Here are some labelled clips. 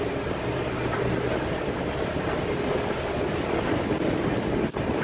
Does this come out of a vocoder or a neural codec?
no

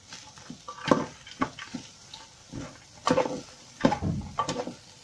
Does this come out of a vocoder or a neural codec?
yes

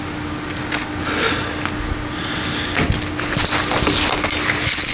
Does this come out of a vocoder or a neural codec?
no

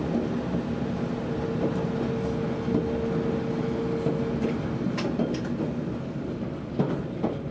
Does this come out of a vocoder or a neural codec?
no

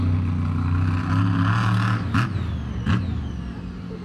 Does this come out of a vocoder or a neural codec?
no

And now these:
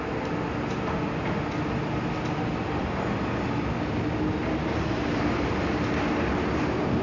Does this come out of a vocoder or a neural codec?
no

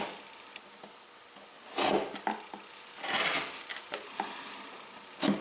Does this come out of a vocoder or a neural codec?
no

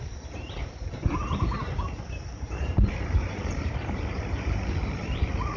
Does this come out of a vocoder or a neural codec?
yes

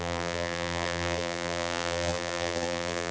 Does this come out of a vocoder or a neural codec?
yes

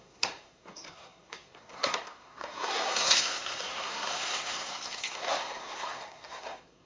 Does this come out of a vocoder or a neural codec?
yes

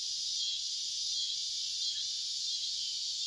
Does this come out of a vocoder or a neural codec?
no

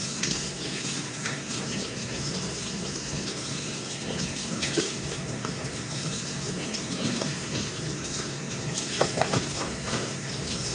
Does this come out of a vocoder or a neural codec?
yes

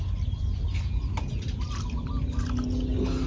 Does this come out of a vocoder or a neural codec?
no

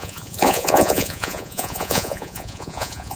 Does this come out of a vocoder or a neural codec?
yes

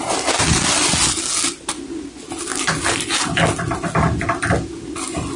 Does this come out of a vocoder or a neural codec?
no